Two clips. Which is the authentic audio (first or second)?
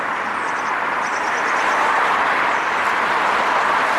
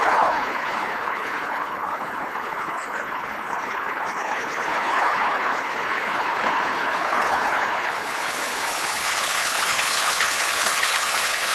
first